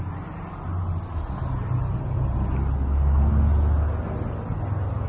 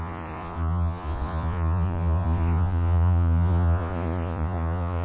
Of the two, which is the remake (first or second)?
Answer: second